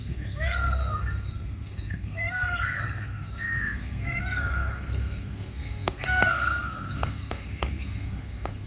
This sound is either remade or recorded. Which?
remade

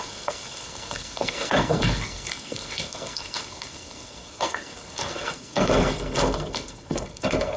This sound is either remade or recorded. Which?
remade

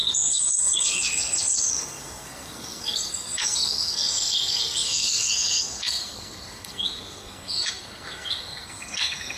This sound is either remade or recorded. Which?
remade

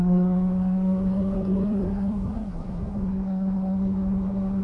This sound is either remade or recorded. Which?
remade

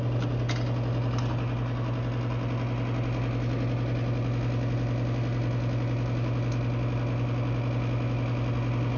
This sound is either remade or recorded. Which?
recorded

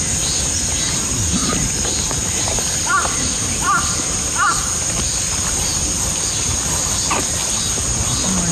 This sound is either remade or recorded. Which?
recorded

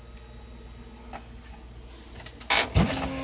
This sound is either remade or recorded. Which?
recorded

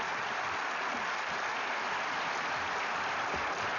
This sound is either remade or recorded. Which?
recorded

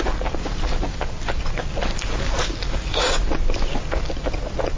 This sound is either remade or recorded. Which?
recorded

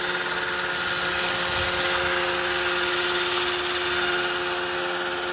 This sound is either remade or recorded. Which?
recorded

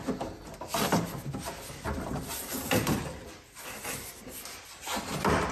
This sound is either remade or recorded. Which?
recorded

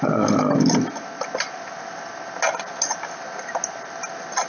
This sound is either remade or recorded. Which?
recorded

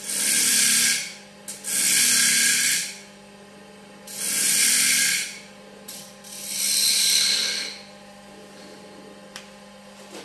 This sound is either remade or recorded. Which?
recorded